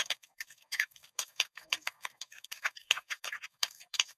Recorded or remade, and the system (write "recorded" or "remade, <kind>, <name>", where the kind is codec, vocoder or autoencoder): remade, codec, DAC